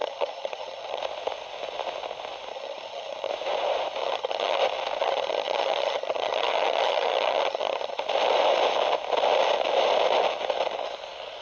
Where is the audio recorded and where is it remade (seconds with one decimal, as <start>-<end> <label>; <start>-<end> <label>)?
0.0-1.0 remade; 1.0-2.5 recorded; 2.5-3.3 remade; 3.3-4.0 recorded; 4.0-4.6 remade; 4.6-5.0 recorded; 5.0-8.0 remade; 8.0-11.4 recorded